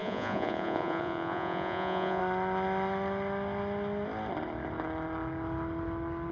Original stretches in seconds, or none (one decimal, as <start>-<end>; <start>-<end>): 2.2-6.3